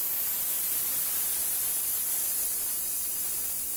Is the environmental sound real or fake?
real